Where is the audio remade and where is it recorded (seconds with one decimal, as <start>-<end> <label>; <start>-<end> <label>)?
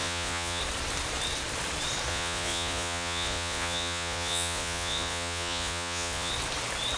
0.0-0.6 remade; 0.6-2.1 recorded; 2.1-6.3 remade; 6.3-7.0 recorded